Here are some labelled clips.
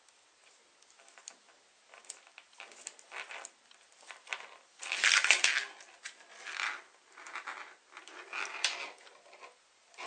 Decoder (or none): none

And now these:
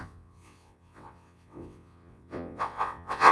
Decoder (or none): vocoder, WaveNeXt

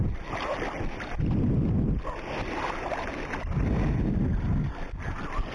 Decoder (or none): none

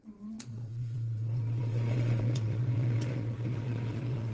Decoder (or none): vocoder, WaveNeXt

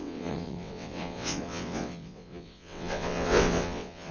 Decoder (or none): vocoder, WaveNeXt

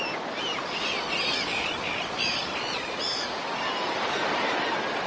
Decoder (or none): none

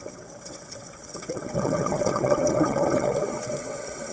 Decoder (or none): vocoder, WaveNeXt